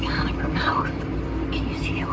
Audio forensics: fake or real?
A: real